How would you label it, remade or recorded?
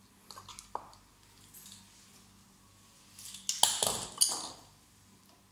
recorded